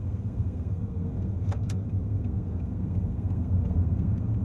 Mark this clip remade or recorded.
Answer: remade